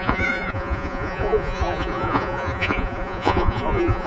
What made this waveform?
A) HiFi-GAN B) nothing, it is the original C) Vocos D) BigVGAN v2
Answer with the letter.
C